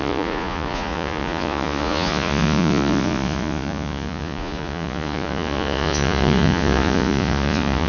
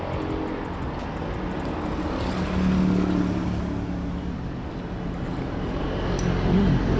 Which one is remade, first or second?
first